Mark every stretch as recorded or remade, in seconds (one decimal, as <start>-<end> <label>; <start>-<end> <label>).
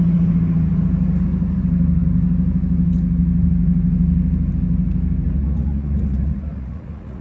0.0-5.4 recorded; 5.4-7.2 remade